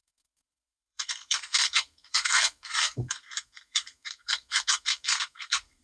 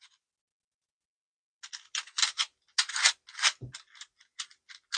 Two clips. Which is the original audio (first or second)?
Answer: second